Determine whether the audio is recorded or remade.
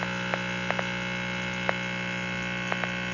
recorded